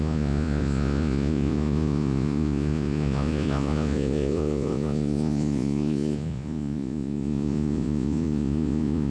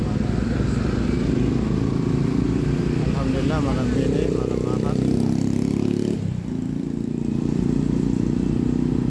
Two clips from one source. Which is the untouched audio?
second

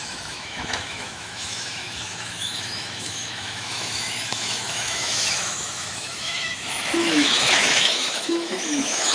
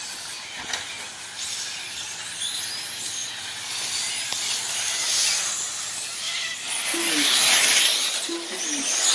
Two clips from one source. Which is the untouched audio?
second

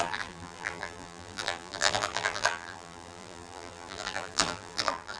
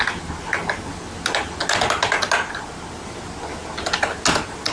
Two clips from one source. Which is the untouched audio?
second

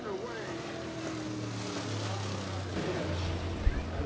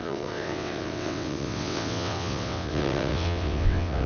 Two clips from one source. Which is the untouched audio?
first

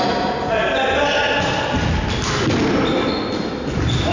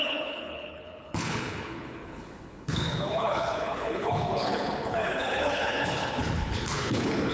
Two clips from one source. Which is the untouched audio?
first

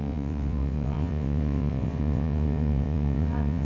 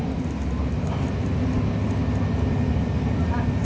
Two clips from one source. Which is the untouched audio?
second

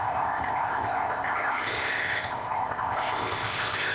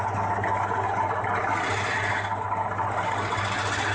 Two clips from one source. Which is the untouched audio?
second